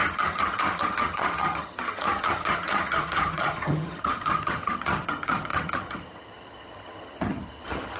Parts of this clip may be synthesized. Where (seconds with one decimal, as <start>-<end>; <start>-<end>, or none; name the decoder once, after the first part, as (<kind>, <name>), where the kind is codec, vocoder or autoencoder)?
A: 0.0-8.0 (vocoder, HiFi-GAN)